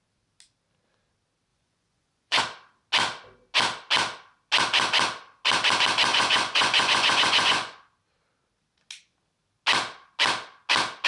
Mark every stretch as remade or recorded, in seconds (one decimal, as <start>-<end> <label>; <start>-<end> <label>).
0.0-1.5 recorded; 1.5-2.4 remade; 2.4-6.1 recorded; 6.1-7.8 remade; 7.8-11.1 recorded